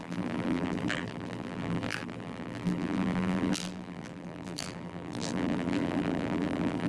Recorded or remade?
remade